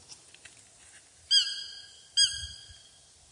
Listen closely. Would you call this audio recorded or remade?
recorded